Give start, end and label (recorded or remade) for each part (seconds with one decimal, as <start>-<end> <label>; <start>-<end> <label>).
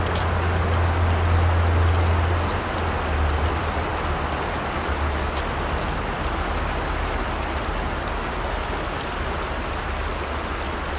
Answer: 0.0-11.0 recorded